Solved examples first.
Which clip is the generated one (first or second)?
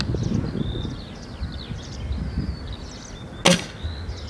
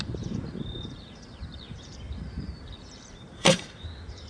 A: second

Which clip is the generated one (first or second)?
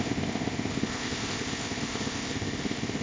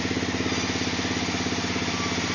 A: first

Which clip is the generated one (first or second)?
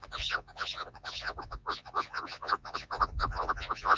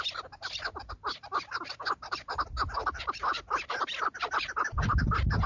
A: first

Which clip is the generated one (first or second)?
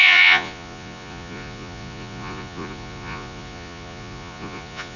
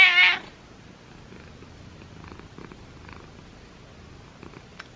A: first